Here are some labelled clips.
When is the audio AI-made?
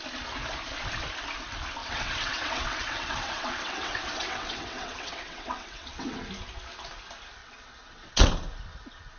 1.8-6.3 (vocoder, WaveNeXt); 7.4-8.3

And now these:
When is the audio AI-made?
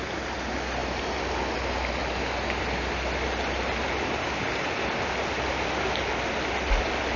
none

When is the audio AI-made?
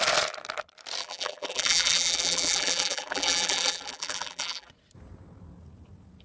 1.0-4.7 (vocoder, BigVGAN v2)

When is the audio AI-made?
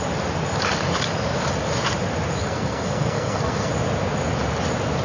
2.4-3.7 (codec, SNAC)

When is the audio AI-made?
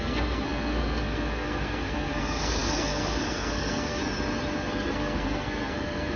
0.0-4.0 (codec, SNAC); 4.7-6.2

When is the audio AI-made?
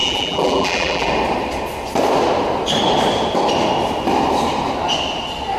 0.0-1.1 (vocoder, BigVGAN v2)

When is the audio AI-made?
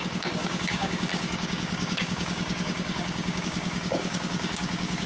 0.0-5.1 (codec, DAC)